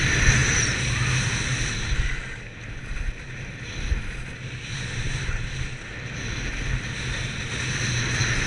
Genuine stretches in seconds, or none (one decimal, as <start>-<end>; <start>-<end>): 0.0-8.5